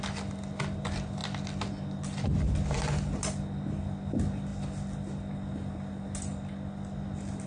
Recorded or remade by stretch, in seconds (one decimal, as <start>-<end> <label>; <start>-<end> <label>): 0.0-7.5 recorded